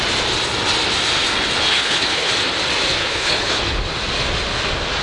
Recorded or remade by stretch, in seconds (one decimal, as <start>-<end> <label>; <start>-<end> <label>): 0.0-1.7 recorded; 1.7-2.3 remade; 2.3-3.0 recorded; 3.0-3.6 remade; 3.6-5.0 recorded